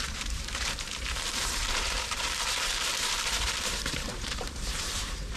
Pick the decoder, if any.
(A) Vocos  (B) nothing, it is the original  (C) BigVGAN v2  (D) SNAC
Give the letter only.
C